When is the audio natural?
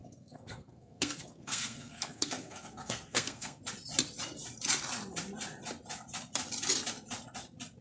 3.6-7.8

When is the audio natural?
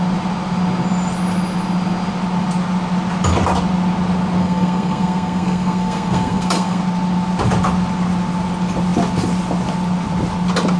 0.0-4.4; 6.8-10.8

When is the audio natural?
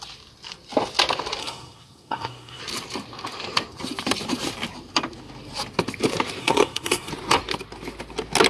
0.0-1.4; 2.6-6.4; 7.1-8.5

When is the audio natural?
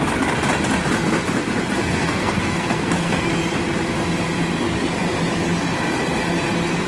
0.0-1.8; 3.3-6.9